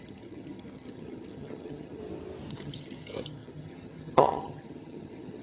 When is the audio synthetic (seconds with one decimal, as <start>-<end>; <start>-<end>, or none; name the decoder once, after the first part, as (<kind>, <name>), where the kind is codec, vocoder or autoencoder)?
0.0-2.0 (vocoder, HiFi-GAN); 2.5-5.4